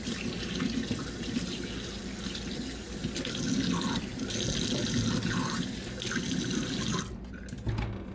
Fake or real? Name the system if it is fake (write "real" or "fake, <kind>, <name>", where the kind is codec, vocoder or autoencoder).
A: real